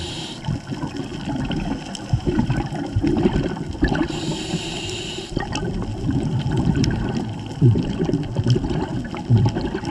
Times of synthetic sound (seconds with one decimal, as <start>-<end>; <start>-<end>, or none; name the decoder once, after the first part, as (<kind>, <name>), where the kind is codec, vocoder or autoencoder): 1.1-5.4 (vocoder, BigVGAN v2); 5.9-8.0; 8.9-9.5